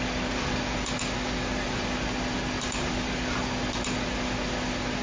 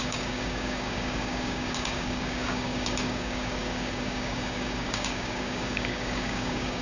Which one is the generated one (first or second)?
second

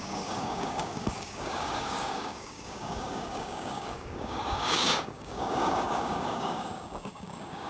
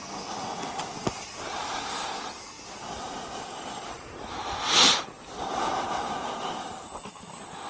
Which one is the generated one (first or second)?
first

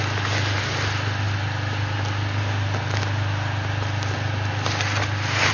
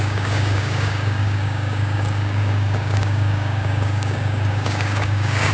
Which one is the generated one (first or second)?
second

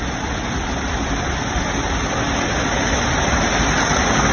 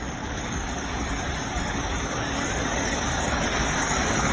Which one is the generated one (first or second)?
second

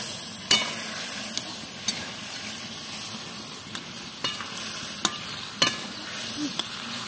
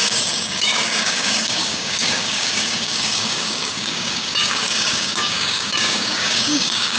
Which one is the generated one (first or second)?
second